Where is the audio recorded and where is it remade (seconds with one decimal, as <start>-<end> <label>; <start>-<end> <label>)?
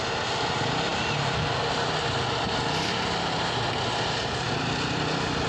0.0-5.5 recorded